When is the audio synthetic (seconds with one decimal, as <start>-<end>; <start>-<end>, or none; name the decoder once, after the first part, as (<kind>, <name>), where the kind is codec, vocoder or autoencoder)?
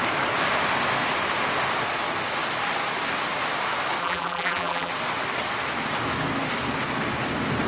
4.0-4.9 (vocoder, BigVGAN v2)